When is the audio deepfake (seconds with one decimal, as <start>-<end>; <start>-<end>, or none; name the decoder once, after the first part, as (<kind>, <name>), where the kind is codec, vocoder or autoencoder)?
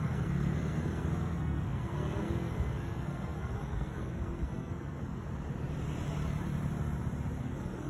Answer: 0.0-5.2 (codec, SNAC); 7.4-7.9